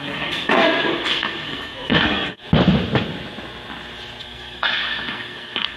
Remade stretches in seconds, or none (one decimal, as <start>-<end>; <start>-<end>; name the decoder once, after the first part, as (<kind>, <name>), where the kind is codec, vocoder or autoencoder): 0.0-2.4 (codec, SNAC); 4.2-5.8

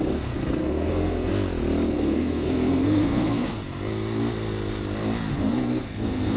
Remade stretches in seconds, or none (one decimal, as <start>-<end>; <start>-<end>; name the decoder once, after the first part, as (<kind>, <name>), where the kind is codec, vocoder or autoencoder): 0.0-1.3 (codec, SNAC); 1.9-3.6; 5.3-6.4

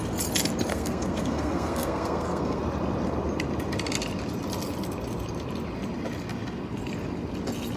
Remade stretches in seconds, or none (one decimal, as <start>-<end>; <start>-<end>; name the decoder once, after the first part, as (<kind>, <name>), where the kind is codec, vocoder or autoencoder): 0.7-2.6 (codec, SNAC)

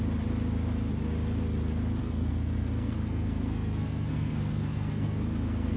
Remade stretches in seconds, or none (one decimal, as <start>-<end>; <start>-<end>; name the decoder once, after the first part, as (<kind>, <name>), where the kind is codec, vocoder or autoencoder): 2.0-5.8 (codec, SNAC)

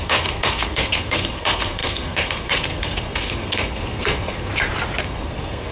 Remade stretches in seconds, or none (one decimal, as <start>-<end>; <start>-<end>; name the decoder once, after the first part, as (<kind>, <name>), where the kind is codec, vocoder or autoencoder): 0.0-4.5 (codec, SNAC); 5.0-5.7

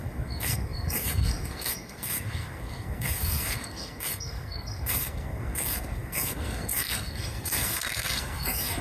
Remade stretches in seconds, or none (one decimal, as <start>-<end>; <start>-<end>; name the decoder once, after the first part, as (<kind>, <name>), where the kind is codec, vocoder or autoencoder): 0.0-8.8 (codec, SNAC)